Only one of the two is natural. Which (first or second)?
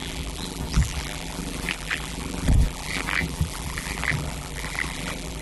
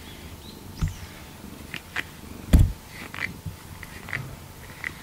second